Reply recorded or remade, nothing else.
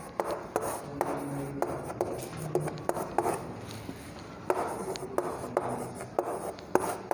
recorded